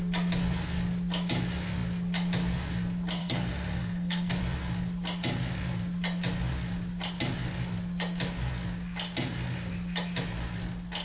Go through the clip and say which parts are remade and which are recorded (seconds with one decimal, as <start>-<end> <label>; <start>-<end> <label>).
0.0-3.2 recorded; 3.2-4.4 remade; 4.4-11.0 recorded